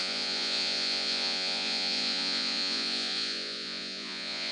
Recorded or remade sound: remade